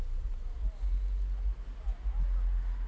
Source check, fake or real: real